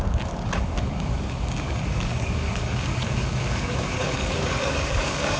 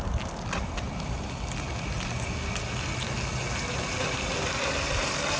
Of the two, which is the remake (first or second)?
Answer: first